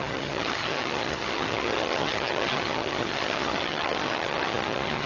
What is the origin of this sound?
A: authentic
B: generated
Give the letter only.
B